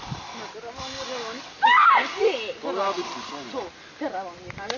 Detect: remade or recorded recorded